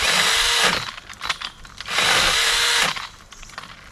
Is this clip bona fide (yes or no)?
yes